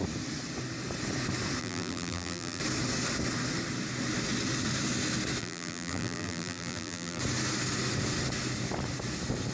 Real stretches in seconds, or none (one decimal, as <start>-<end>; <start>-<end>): 0.0-1.6; 2.6-5.4; 7.2-9.5